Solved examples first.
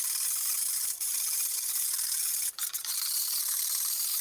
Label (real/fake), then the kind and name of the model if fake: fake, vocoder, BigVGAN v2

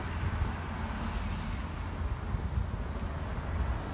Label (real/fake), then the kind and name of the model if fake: real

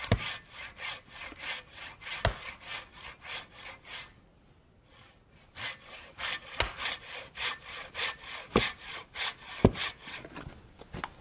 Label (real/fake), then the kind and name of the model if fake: real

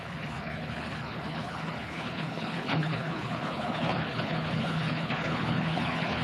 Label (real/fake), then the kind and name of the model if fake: fake, codec, HILCodec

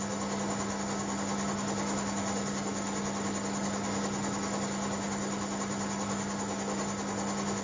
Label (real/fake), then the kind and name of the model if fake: real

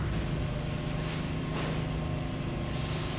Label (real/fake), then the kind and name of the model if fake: real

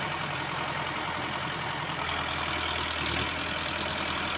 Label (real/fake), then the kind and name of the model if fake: real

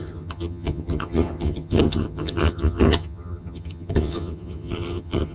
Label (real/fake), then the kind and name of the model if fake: fake, vocoder, HiFi-GAN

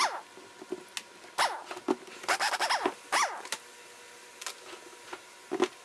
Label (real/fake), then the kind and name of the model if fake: real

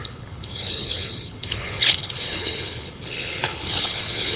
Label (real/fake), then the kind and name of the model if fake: fake, codec, HILCodec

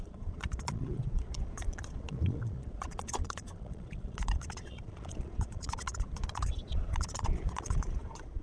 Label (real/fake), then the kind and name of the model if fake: fake, vocoder, Vocos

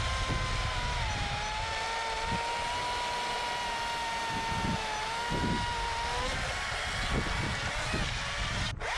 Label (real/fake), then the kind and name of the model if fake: real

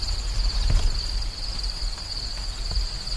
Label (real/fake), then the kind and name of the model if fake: real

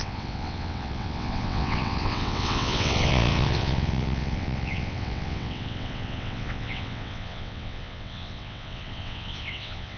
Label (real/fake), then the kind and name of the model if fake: fake, vocoder, WaveNeXt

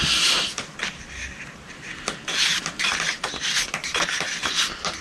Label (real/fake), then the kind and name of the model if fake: real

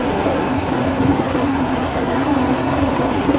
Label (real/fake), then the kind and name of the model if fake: fake, codec, SNAC